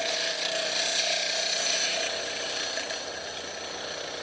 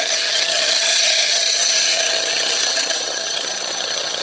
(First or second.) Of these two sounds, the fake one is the second